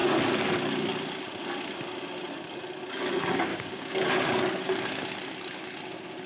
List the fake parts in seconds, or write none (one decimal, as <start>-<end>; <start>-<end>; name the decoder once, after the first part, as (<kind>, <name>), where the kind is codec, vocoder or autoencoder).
3.5-4.0 (codec, DAC)